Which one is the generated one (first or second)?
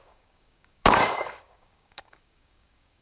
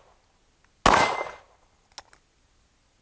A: first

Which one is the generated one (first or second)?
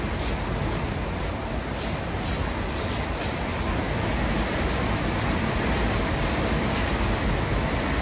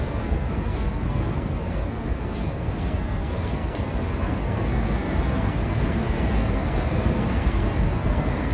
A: second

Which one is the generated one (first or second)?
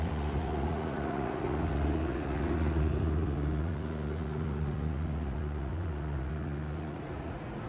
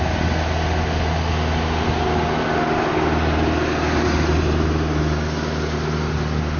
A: first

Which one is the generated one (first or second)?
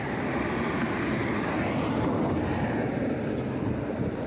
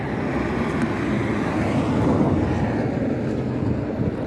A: first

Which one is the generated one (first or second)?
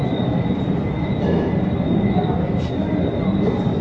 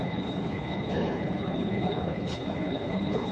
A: second